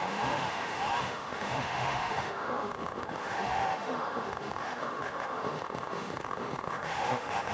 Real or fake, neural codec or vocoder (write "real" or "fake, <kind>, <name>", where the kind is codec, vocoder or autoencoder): fake, autoencoder, DAC-VAE